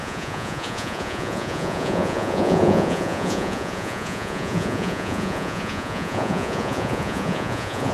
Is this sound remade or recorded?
remade